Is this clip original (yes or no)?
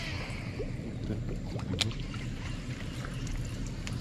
yes